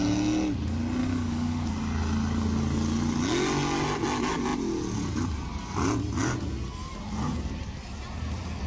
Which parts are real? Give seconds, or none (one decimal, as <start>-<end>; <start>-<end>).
0.0-1.0; 1.7-8.7